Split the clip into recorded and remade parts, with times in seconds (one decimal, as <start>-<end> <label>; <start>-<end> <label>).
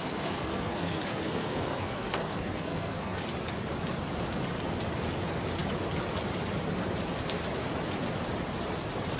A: 0.0-3.2 remade; 3.2-9.2 recorded